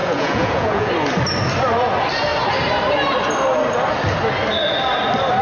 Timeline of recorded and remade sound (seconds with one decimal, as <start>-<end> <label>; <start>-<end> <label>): 0.0-0.9 remade; 0.9-5.4 recorded